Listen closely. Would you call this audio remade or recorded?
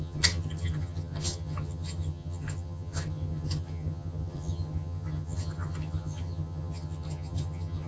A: remade